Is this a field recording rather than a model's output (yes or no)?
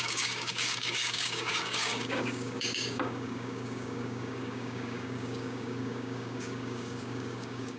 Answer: no